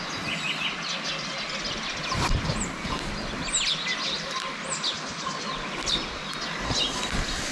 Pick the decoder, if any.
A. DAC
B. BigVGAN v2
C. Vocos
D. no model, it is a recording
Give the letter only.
D